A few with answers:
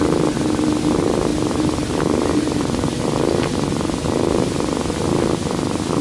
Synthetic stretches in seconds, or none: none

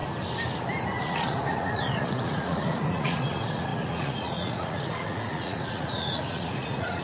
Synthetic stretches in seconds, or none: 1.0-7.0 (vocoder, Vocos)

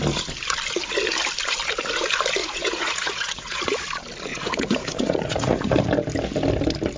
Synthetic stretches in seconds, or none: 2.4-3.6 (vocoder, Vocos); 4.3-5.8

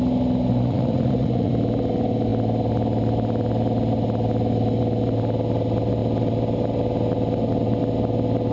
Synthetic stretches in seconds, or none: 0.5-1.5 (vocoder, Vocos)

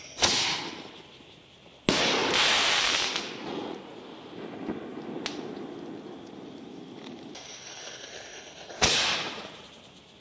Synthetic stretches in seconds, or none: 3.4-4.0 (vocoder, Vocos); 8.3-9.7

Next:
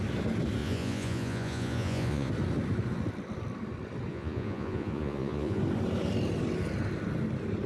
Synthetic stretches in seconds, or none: 0.6-2.3 (vocoder, Vocos); 4.1-5.6

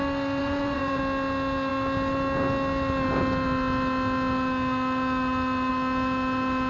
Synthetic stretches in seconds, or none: 0.4-1.0 (vocoder, Vocos)